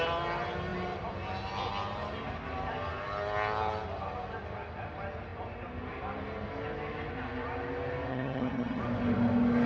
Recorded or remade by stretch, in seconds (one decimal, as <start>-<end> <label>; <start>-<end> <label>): 0.0-8.1 recorded; 8.1-8.8 remade; 8.8-9.7 recorded